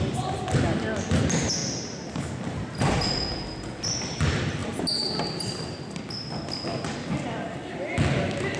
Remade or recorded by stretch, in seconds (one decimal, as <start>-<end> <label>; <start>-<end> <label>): 0.0-8.6 recorded